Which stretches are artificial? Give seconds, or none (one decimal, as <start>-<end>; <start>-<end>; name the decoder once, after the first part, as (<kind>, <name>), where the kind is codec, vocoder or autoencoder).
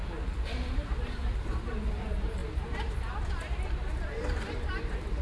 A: 0.7-2.4 (vocoder, BigVGAN v2); 3.9-5.2